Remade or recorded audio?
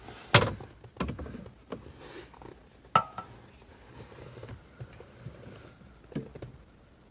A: recorded